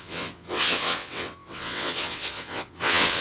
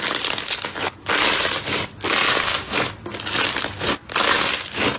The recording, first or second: second